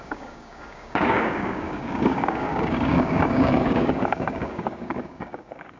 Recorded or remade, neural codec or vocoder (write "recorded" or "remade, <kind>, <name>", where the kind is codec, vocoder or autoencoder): remade, codec, DAC